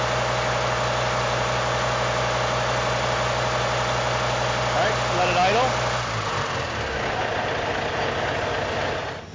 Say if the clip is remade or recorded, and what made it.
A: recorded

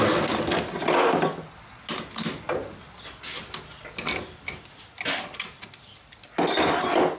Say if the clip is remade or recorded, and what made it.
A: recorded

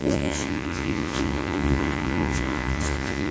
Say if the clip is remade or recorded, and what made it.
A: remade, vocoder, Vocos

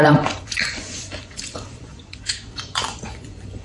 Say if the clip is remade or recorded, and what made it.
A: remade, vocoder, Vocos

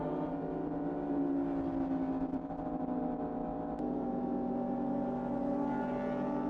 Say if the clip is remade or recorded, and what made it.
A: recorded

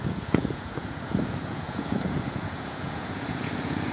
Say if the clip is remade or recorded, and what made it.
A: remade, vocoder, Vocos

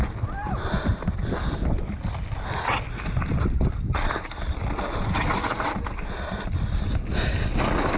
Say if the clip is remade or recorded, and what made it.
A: recorded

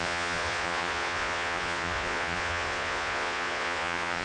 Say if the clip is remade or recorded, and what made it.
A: remade, vocoder, Vocos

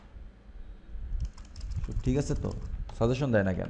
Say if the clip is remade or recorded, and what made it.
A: recorded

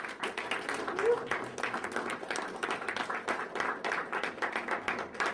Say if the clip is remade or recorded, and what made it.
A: recorded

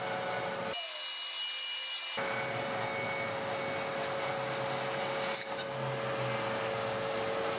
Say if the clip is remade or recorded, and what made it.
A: recorded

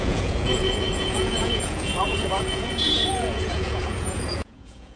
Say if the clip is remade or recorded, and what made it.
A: remade, vocoder, Vocos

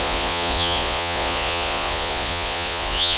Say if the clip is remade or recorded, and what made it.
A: remade, vocoder, Vocos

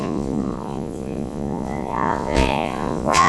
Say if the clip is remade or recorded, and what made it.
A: remade, vocoder, Vocos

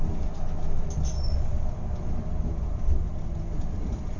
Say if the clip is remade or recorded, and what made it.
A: recorded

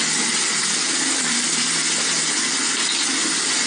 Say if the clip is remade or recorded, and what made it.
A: recorded